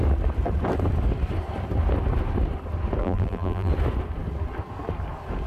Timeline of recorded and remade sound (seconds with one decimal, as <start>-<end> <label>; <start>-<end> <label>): 0.0-3.0 recorded; 3.0-3.7 remade; 3.7-5.5 recorded